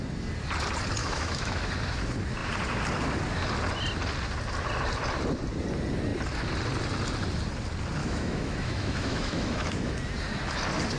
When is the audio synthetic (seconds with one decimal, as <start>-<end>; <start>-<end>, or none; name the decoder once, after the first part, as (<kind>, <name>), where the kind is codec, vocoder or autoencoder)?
1.0-1.7 (autoencoder, DAC-VAE); 8.0-9.9